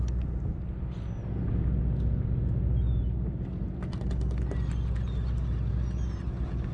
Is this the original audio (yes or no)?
yes